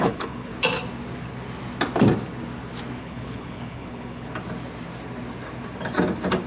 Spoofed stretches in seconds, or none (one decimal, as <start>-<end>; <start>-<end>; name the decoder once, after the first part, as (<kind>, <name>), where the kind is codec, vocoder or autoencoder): 0.0-0.5 (codec, HILCodec); 3.0-4.3